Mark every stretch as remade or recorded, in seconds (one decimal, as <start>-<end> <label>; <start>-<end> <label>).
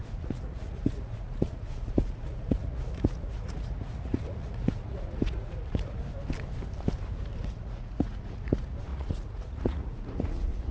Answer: 0.0-6.0 remade; 6.0-7.4 recorded; 7.4-10.7 remade